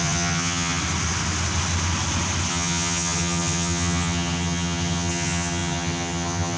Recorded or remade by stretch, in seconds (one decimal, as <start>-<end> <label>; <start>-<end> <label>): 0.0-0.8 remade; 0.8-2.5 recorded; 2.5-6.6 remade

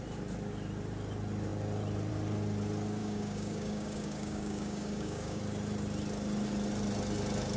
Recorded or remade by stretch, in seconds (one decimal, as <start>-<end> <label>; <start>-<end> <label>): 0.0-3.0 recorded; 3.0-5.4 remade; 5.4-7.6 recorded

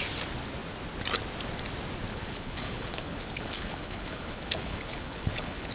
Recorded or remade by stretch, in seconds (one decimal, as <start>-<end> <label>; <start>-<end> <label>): 0.0-2.1 recorded; 2.1-5.7 remade

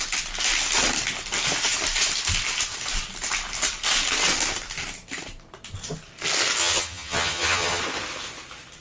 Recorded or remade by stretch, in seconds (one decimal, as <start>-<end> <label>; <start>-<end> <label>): 0.0-6.6 recorded; 6.6-7.8 remade; 7.8-8.8 recorded

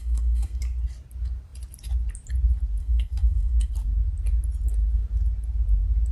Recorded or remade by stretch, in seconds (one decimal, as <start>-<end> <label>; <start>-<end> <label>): 0.0-0.6 remade; 0.6-2.8 recorded; 2.8-3.7 remade; 3.7-6.1 recorded

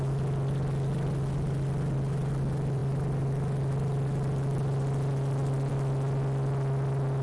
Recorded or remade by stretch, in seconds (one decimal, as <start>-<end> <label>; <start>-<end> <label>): 0.0-7.2 recorded

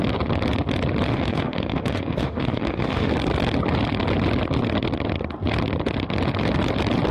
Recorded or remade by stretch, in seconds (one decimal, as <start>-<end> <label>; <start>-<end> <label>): 0.0-1.1 recorded; 1.1-3.1 remade; 3.1-7.1 recorded